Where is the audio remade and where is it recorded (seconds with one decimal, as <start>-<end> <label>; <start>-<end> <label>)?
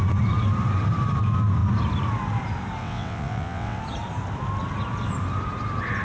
0.0-2.8 recorded; 2.8-3.8 remade; 3.8-6.0 recorded